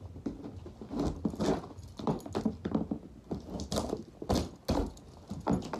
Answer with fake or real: real